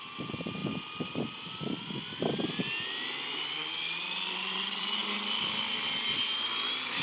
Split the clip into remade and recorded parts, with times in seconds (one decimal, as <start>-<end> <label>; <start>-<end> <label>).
0.0-3.6 remade; 3.6-4.4 recorded; 4.4-5.0 remade; 5.0-6.2 recorded; 6.2-7.0 remade